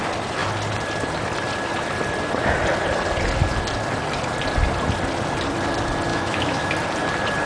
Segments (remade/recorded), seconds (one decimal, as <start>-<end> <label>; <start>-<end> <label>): 0.0-6.1 recorded; 6.1-6.7 remade; 6.7-7.5 recorded

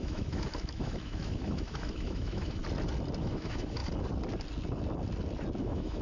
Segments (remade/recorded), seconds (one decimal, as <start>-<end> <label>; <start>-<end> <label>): 0.0-2.6 remade; 2.6-3.2 recorded; 3.2-3.8 remade; 3.8-5.6 recorded; 5.6-6.0 remade

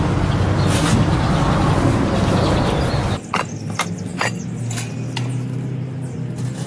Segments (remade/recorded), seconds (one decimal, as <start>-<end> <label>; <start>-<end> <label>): 0.0-6.7 recorded

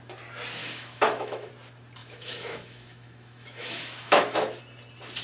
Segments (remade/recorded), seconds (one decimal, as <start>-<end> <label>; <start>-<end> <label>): 0.0-0.6 recorded; 0.6-1.5 remade; 1.5-2.0 recorded; 2.0-4.6 remade; 4.6-5.2 recorded